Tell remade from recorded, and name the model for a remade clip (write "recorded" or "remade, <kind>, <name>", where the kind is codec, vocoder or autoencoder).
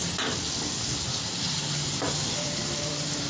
recorded